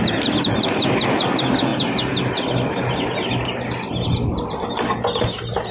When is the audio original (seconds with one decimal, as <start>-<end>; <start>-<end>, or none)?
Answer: 0.0-5.7